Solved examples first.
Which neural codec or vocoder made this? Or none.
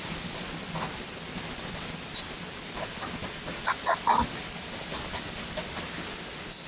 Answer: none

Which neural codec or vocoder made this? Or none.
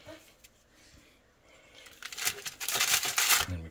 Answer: none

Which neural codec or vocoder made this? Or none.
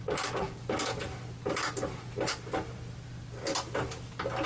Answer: none